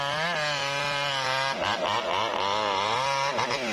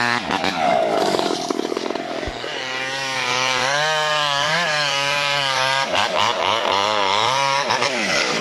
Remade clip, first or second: second